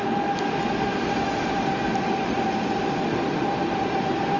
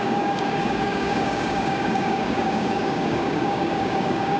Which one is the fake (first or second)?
second